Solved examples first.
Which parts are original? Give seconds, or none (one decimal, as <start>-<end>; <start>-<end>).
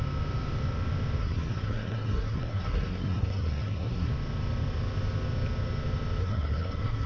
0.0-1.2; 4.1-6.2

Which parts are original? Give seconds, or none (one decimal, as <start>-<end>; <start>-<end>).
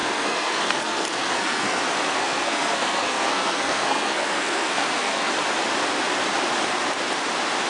1.8-2.2; 5.3-7.7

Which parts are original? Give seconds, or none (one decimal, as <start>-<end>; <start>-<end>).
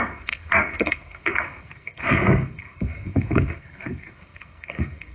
none